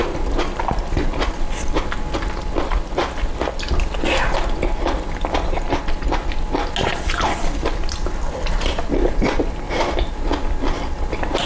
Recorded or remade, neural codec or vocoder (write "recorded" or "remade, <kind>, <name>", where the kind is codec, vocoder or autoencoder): recorded